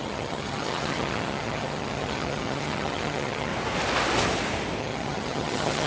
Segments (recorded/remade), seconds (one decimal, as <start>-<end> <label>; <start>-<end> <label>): 0.0-3.5 remade; 3.5-4.8 recorded; 4.8-5.9 remade